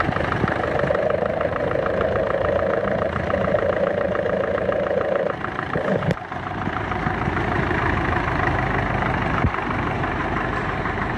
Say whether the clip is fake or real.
fake